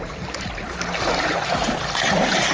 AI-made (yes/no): no